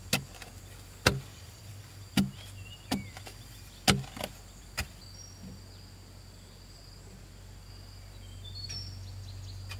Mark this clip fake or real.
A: real